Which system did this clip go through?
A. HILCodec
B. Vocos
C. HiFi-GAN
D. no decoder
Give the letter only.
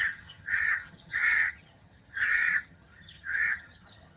C